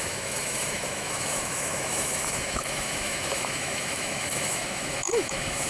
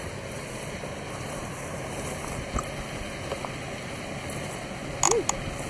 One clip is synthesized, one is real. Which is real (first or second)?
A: second